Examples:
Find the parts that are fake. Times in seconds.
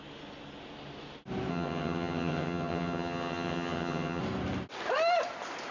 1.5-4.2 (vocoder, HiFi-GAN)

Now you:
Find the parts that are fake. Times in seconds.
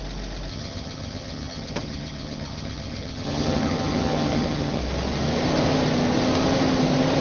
0.5-4.8 (vocoder, HiFi-GAN)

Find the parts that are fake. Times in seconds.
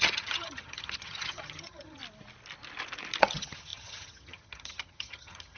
0.0-2.0 (vocoder, HiFi-GAN); 3.2-5.6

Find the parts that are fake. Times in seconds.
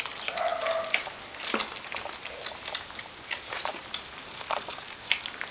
none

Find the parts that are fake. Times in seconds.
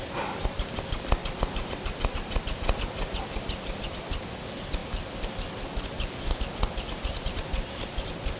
none